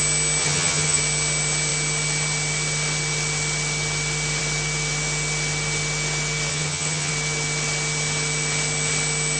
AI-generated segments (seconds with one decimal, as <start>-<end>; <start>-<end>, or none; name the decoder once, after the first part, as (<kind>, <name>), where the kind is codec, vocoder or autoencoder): 0.4-1.0 (vocoder, HiFi-GAN); 6.5-7.1